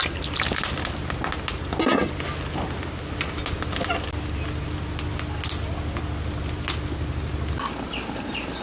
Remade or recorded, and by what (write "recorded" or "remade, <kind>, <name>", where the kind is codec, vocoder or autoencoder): recorded